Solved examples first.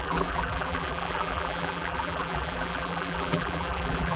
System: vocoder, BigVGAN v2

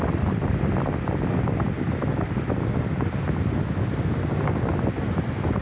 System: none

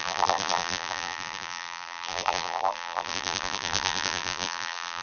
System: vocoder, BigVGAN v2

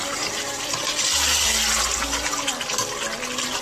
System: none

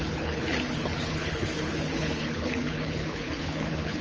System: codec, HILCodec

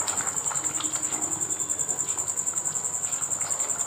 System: none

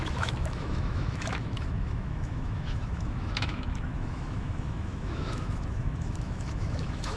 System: autoencoder, DAC-VAE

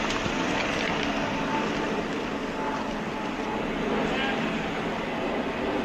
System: none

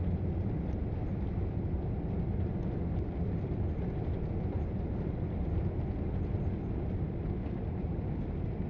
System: none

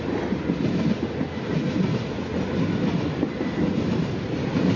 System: none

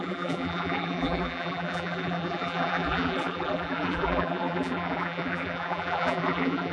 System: vocoder, BigVGAN v2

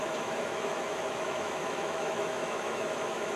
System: autoencoder, DAC-VAE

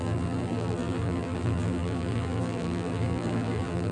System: vocoder, BigVGAN v2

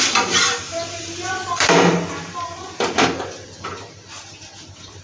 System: vocoder, BigVGAN v2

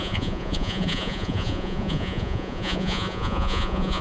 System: vocoder, Vocos